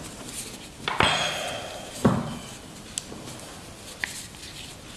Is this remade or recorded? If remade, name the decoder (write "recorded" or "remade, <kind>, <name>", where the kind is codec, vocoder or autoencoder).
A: recorded